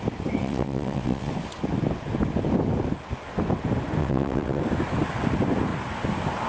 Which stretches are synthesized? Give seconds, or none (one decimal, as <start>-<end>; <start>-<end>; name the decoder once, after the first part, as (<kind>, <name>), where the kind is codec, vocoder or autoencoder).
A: 0.4-1.3 (vocoder, WaveNeXt); 4.0-4.6